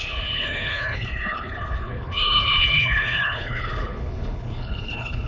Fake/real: fake